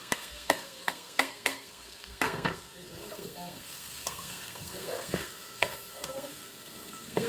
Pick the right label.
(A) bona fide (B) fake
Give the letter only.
B